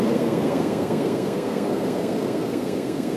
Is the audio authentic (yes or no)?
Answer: no